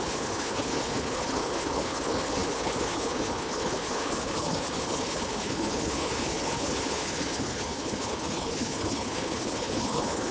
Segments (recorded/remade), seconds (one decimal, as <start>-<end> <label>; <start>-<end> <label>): 0.0-10.3 remade